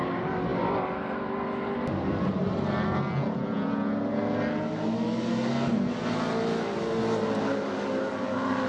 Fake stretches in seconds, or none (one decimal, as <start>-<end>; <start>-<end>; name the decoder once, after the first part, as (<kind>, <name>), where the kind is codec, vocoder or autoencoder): none